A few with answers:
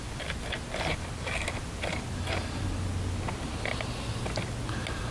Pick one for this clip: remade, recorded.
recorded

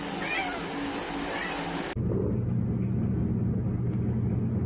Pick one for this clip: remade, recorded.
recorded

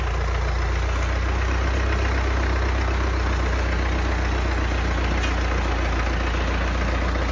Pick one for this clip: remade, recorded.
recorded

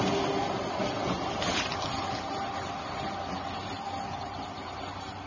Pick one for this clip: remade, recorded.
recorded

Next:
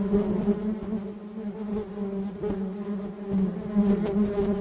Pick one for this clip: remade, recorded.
recorded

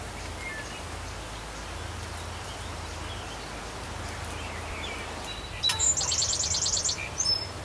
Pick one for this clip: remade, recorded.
recorded